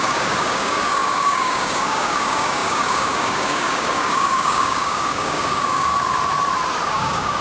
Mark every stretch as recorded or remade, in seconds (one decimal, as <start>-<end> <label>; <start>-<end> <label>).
0.0-5.9 remade; 5.9-6.9 recorded; 6.9-7.4 remade